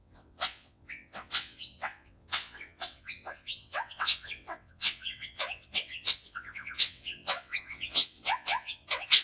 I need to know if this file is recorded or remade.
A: remade